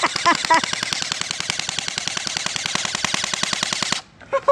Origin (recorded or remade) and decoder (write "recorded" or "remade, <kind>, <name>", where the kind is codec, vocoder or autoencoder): recorded